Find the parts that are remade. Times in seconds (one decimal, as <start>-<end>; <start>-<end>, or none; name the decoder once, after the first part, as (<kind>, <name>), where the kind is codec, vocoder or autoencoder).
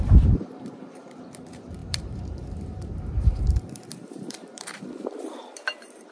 0.0-6.1 (vocoder, BigVGAN v2)